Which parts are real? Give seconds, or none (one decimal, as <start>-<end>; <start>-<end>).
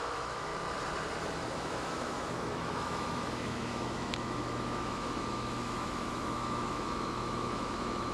0.5-1.5